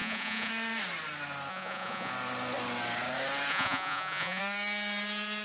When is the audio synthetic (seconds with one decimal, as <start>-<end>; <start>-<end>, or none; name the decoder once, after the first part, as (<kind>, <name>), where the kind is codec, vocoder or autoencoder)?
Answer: 0.0-0.5 (vocoder, Vocos); 1.5-2.1; 3.5-4.4